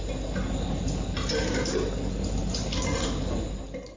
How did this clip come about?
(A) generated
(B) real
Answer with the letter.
B